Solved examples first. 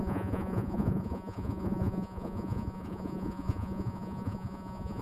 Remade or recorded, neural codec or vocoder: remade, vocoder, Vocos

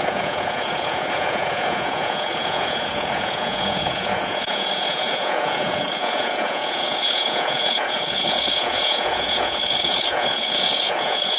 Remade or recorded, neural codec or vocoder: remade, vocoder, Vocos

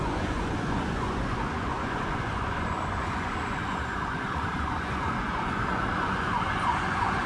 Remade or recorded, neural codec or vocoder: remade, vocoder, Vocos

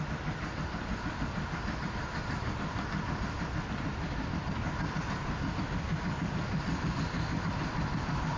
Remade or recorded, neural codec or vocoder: recorded